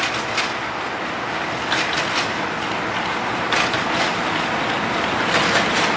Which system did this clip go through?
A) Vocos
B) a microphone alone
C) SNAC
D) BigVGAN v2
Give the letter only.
B